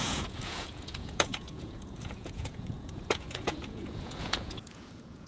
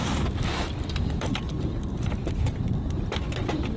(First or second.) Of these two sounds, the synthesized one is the first